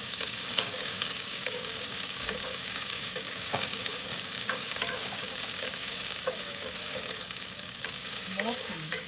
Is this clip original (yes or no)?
no